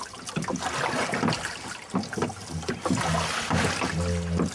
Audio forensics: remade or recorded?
recorded